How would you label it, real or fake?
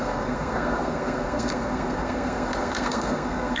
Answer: fake